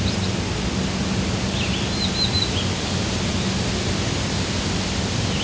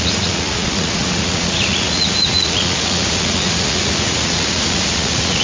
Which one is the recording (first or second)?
first